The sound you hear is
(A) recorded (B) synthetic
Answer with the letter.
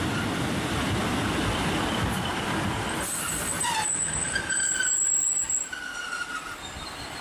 A